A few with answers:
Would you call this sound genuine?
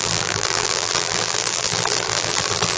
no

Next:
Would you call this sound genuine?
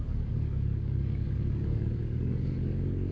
no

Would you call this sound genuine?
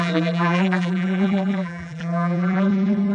no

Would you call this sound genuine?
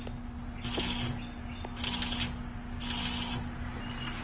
yes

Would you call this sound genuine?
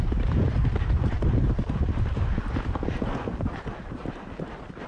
no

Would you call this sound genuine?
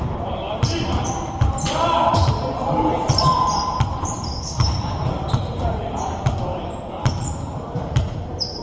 no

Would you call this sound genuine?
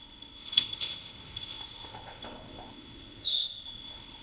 no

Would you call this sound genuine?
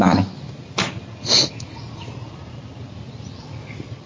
yes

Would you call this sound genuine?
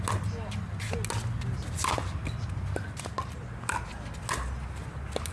yes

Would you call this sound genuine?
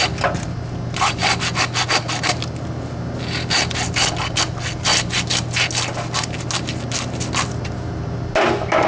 yes